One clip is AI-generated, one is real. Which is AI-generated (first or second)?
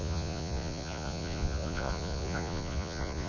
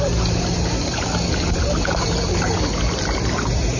first